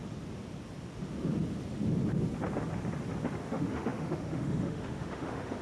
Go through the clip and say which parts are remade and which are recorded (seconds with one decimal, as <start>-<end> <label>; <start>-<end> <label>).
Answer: 0.0-3.4 recorded; 3.4-5.6 remade

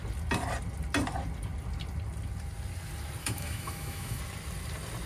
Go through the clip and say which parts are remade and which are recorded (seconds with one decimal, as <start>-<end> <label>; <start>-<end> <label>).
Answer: 0.0-3.2 recorded; 3.2-4.2 remade; 4.2-5.1 recorded

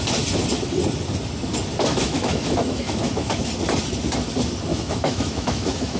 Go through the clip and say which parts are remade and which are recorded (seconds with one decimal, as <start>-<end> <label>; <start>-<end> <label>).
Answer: 0.0-1.9 recorded; 1.9-3.5 remade; 3.5-4.7 recorded; 4.7-6.0 remade

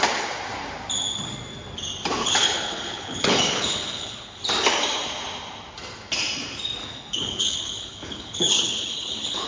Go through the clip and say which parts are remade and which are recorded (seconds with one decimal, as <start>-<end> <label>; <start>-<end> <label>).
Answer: 0.0-2.2 recorded; 2.2-4.4 remade; 4.4-6.8 recorded; 6.8-9.5 remade

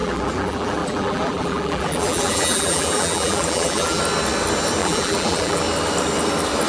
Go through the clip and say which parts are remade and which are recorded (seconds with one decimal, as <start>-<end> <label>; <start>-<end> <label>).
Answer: 0.0-4.0 remade; 4.0-4.8 recorded; 4.8-5.6 remade; 5.6-6.7 recorded

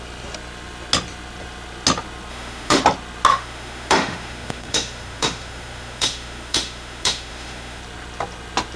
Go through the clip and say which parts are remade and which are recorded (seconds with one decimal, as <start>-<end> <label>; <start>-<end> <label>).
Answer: 0.0-2.3 recorded; 2.3-2.8 remade; 2.8-3.3 recorded; 3.3-7.8 remade; 7.8-8.8 recorded

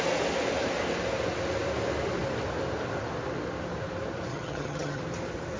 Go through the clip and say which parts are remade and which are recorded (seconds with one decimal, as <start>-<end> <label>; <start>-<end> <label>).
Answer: 0.0-4.3 recorded; 4.3-5.0 remade; 5.0-5.6 recorded

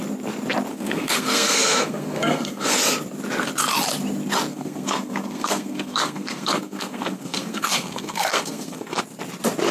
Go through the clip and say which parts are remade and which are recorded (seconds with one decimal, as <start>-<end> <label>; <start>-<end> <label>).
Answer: 0.0-0.7 recorded; 0.7-2.8 remade; 2.8-4.5 recorded; 4.5-9.0 remade; 9.0-9.7 recorded